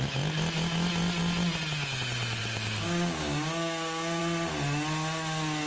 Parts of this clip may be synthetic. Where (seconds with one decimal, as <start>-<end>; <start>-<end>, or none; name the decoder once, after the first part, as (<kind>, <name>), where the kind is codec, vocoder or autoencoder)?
2.4-4.2 (codec, DAC)